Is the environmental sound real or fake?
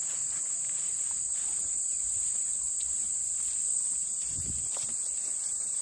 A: real